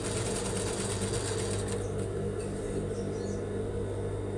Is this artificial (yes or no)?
no